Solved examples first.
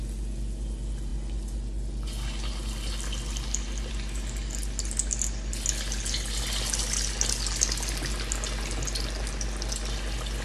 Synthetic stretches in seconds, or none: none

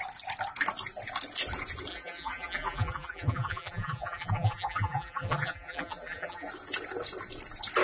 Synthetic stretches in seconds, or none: 1.9-6.5 (vocoder, BigVGAN v2)

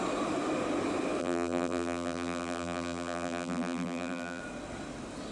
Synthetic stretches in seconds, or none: 1.2-4.4 (vocoder, BigVGAN v2)

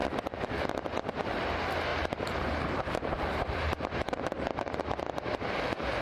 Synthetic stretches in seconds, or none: 1.9-5.0 (vocoder, BigVGAN v2)

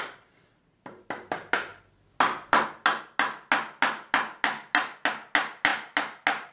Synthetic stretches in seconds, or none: none